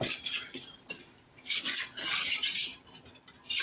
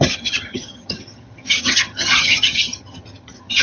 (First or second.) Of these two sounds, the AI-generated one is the second